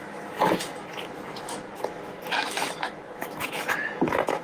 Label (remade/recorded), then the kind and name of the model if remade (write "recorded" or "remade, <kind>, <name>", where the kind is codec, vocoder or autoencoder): remade, autoencoder, DAC-VAE